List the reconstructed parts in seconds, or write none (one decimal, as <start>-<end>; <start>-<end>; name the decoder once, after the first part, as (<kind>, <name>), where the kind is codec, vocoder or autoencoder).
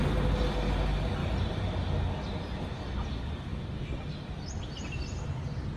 1.2-2.0 (vocoder, BigVGAN v2); 3.5-4.1